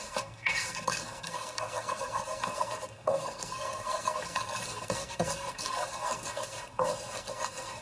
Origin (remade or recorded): remade